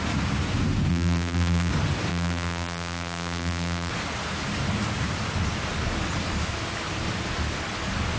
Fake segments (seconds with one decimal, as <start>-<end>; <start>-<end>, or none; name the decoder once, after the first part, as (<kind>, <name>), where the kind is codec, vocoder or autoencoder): 0.9-1.7 (vocoder, BigVGAN v2); 2.1-3.9